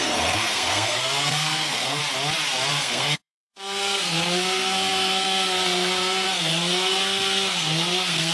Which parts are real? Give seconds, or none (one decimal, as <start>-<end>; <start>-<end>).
2.0-2.7